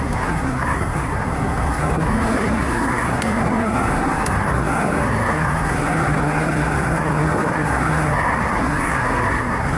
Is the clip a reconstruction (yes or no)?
yes